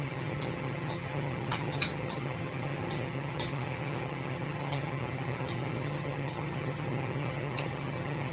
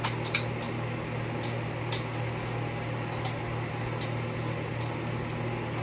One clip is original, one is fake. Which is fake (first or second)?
first